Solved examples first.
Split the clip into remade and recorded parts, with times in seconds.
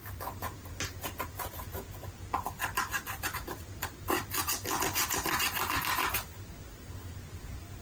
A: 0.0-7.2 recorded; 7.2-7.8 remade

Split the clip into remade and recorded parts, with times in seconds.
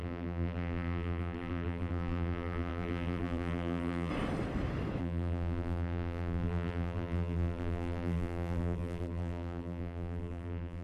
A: 0.0-4.1 remade; 4.1-5.0 recorded; 5.0-10.8 remade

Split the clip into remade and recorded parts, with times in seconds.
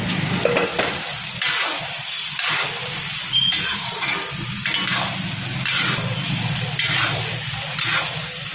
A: 0.0-8.5 recorded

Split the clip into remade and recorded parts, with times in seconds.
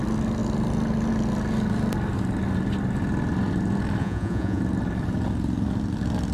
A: 0.0-4.0 recorded; 4.0-4.6 remade; 4.6-6.3 recorded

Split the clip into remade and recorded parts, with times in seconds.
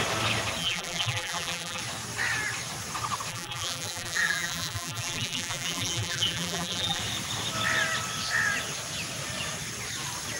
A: 0.0-0.6 recorded; 0.6-1.8 remade; 1.8-3.3 recorded; 3.3-7.0 remade; 7.0-10.4 recorded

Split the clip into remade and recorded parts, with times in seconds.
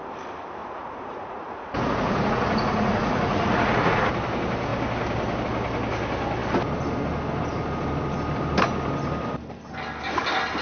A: 0.0-0.6 recorded; 0.6-4.1 remade; 4.1-10.6 recorded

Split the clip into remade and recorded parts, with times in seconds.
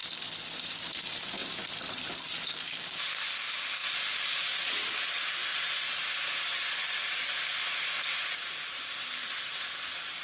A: 0.0-5.5 recorded; 5.5-8.8 remade; 8.8-10.2 recorded